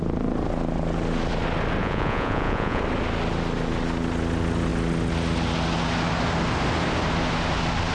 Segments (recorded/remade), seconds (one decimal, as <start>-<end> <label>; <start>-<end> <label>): 0.0-1.8 recorded; 1.8-2.8 remade; 2.8-7.9 recorded